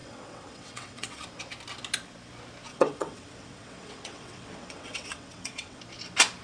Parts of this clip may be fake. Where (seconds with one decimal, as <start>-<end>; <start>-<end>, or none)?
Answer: 0.0-1.2; 2.7-5.8